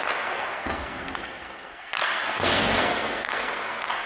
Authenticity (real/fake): fake